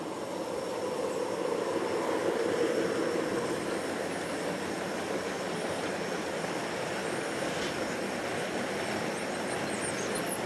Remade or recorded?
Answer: recorded